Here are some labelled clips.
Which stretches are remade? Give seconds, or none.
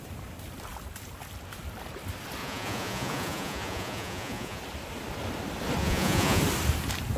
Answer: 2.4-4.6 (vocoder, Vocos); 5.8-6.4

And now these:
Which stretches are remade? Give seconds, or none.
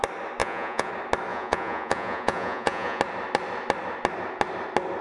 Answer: 0.4-0.9 (vocoder, Vocos); 1.3-3.0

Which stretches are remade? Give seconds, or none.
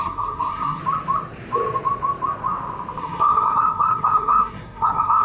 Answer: 0.0-0.8 (codec, SNAC); 3.0-5.2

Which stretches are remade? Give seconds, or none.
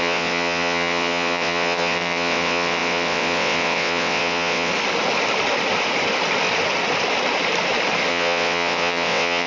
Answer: 0.0-4.7 (vocoder, WaveNeXt); 8.1-9.5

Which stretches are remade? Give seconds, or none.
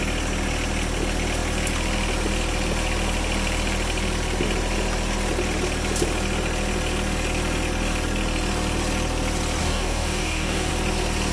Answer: 9.6-10.7 (codec, DAC)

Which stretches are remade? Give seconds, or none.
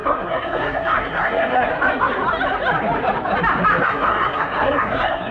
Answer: 0.0-1.7 (codec, SNAC); 3.8-5.3